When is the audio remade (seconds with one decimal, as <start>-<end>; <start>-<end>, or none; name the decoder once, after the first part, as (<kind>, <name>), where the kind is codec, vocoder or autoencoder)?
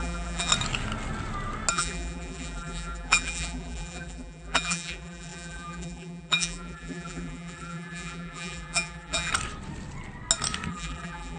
0.0-0.5 (vocoder, BigVGAN v2); 1.7-9.3; 10.7-11.4